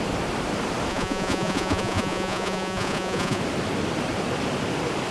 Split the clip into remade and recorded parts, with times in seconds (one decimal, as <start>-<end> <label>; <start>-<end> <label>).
0.0-0.9 recorded; 0.9-3.4 remade; 3.4-5.1 recorded